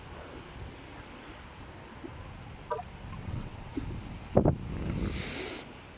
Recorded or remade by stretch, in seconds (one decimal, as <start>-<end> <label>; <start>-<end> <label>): 0.0-3.2 recorded; 3.2-3.7 remade; 3.7-6.0 recorded